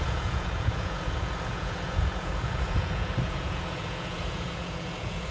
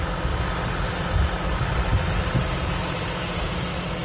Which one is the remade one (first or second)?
first